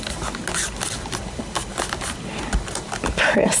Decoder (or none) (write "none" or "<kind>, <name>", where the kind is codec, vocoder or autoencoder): none